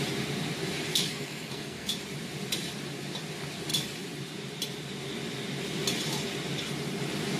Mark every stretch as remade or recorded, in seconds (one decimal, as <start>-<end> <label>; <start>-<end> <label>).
0.0-0.9 recorded; 0.9-1.9 remade; 1.9-7.4 recorded